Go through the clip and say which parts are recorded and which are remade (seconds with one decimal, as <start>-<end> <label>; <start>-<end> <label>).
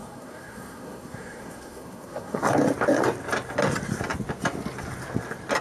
0.0-2.4 remade; 2.4-5.6 recorded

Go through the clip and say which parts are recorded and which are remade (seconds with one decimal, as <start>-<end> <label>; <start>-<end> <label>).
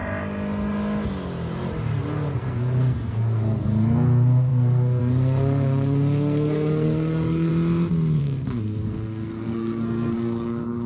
0.0-2.3 recorded; 2.3-7.5 remade; 7.5-8.2 recorded; 8.2-10.9 remade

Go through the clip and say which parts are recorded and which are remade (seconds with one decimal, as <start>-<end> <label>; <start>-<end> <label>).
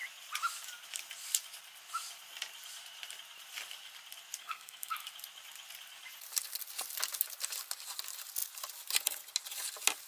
0.0-4.4 recorded; 4.4-4.9 remade; 4.9-10.1 recorded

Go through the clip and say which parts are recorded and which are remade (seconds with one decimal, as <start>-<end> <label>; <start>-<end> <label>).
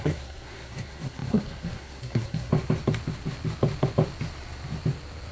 0.0-2.5 remade; 2.5-5.3 recorded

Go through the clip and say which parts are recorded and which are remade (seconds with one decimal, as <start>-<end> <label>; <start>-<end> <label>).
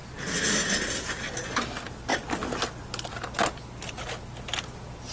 0.0-5.1 recorded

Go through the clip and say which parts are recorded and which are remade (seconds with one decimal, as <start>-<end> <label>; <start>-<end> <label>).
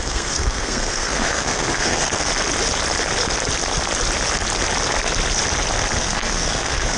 0.0-2.3 remade; 2.3-6.0 recorded; 6.0-7.0 remade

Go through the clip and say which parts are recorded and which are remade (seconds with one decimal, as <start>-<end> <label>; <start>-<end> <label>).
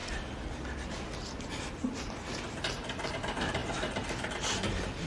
0.0-5.1 recorded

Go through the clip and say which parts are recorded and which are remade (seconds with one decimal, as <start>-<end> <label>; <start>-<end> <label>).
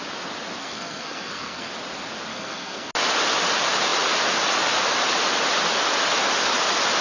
0.0-0.6 recorded; 0.6-1.7 remade; 1.7-2.3 recorded; 2.3-2.9 remade; 2.9-7.0 recorded